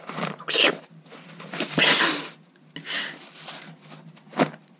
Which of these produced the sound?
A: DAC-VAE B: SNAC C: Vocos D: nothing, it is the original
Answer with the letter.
D